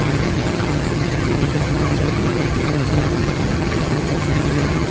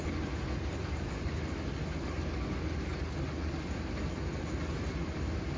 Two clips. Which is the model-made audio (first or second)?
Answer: first